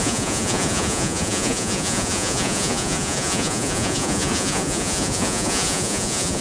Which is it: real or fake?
fake